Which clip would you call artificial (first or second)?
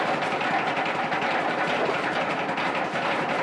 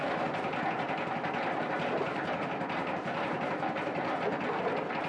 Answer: first